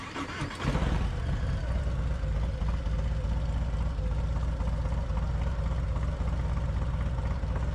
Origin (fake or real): real